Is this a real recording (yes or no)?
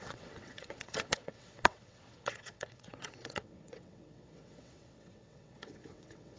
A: no